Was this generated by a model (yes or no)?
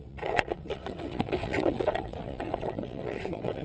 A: yes